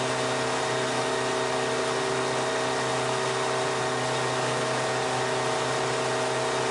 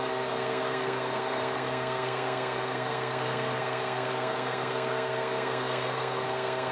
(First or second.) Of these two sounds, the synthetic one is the second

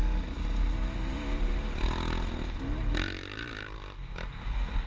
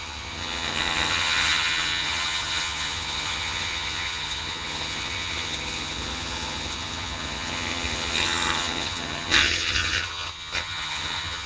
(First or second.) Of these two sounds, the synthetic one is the second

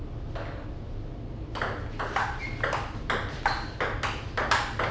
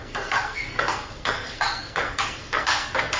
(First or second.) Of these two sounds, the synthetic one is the second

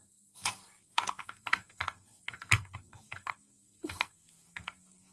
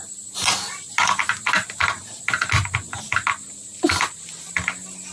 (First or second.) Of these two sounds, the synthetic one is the first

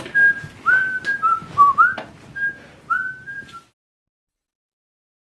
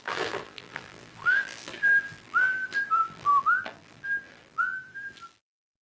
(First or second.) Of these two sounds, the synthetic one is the second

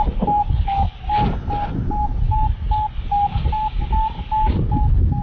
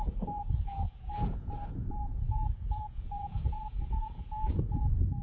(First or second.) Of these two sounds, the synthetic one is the second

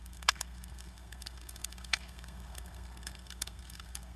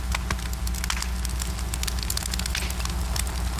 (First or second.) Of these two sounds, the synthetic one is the first